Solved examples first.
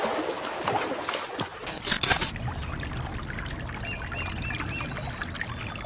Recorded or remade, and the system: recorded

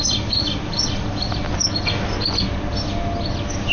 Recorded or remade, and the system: recorded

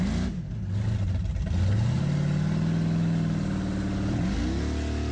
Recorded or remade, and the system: recorded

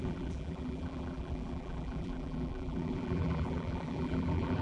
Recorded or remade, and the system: remade, vocoder, BigVGAN v2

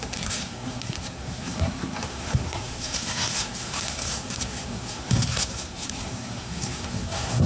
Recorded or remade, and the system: remade, codec, SNAC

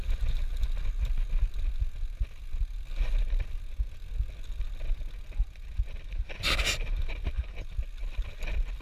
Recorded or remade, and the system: recorded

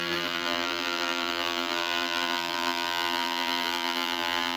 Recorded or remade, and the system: remade, vocoder, BigVGAN v2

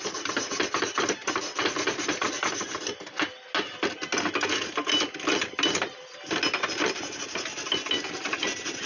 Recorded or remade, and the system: recorded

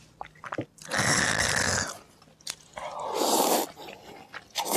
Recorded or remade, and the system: recorded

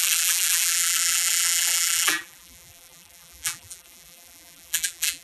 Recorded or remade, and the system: remade, vocoder, BigVGAN v2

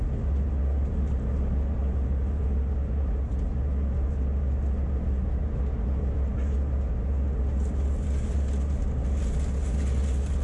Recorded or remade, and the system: recorded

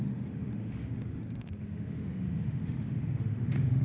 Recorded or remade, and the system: remade, autoencoder, DAC-VAE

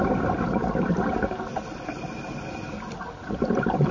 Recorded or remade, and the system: recorded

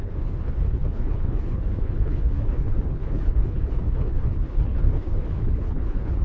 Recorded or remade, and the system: remade, codec, HILCodec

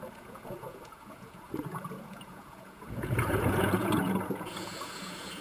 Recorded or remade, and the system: remade, vocoder, Vocos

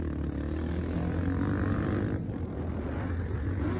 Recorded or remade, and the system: recorded